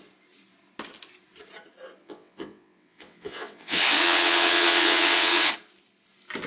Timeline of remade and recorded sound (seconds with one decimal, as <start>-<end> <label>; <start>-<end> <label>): 0.0-2.0 recorded; 2.0-5.5 remade; 5.5-6.5 recorded